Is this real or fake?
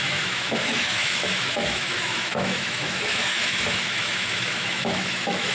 fake